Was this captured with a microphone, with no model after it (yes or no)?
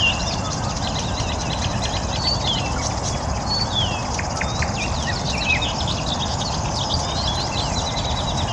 yes